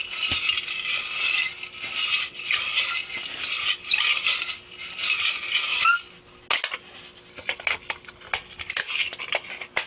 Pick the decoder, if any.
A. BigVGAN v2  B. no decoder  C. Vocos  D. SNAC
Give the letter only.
B